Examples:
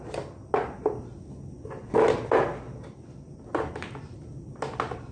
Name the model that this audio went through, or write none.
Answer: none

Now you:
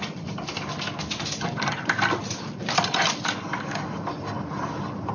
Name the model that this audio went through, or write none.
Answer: none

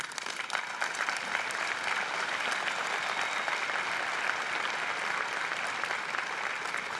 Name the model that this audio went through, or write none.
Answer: none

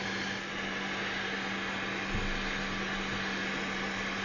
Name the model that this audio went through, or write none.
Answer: none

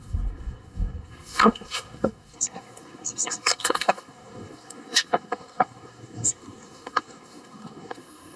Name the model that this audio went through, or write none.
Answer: codec, SNAC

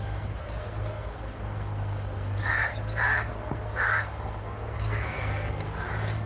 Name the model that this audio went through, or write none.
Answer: codec, SNAC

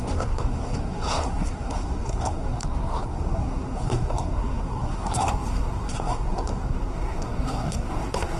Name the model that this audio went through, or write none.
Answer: codec, SNAC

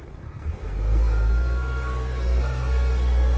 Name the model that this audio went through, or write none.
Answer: codec, SNAC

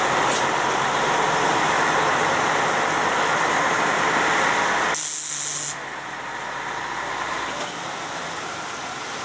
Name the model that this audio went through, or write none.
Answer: none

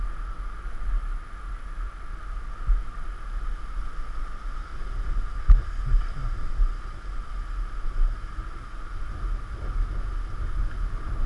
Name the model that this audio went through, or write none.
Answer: none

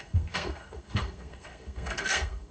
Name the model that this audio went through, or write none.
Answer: codec, SNAC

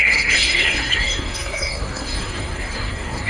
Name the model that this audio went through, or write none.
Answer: codec, SNAC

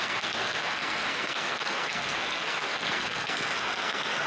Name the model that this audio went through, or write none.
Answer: codec, SNAC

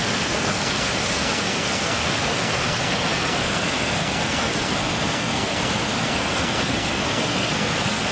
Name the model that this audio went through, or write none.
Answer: codec, SNAC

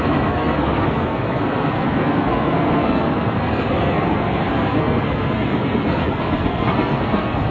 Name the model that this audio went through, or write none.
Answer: codec, SNAC